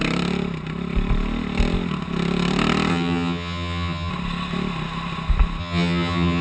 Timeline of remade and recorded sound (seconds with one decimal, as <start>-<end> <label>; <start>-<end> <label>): 0.0-2.9 recorded; 2.9-4.1 remade; 4.1-5.6 recorded; 5.6-6.4 remade